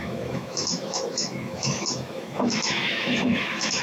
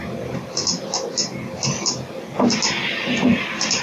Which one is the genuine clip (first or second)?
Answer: second